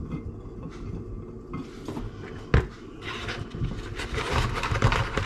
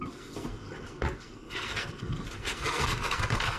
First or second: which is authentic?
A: first